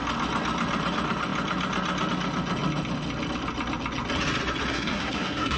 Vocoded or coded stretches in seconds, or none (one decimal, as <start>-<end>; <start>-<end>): 4.7-5.6